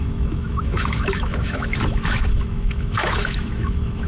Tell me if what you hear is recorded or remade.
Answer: remade